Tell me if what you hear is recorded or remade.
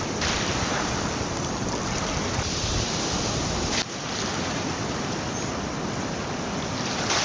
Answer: recorded